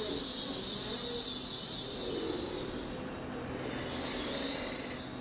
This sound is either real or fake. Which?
real